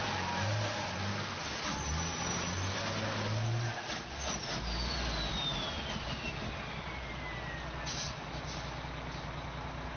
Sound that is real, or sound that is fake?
real